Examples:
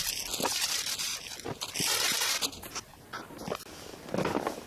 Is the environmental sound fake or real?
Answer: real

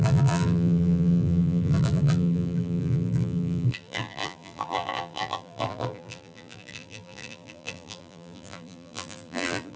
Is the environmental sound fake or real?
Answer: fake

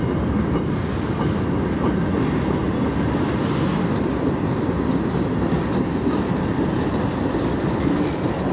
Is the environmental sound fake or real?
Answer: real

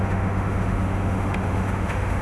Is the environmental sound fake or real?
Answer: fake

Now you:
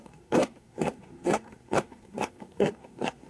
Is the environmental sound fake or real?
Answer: fake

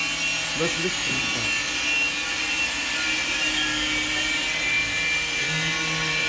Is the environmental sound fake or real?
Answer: real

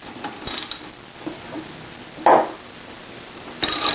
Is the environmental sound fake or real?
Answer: fake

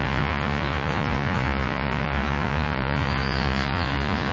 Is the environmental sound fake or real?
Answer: fake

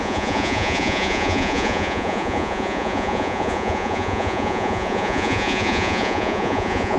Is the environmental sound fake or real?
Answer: fake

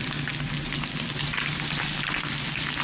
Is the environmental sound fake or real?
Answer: real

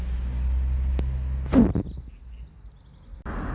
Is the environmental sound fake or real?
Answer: real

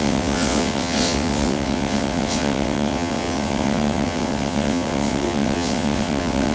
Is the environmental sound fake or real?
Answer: fake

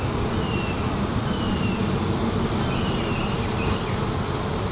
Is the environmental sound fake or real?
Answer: real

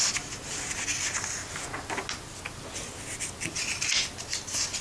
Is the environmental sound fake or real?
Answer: real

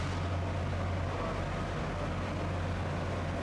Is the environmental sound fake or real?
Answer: real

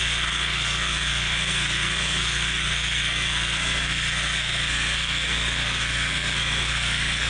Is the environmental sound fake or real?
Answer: fake